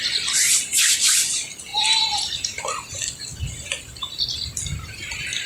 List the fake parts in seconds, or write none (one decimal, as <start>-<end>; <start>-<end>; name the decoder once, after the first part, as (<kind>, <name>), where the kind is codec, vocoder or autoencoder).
1.7-2.6 (vocoder, BigVGAN v2)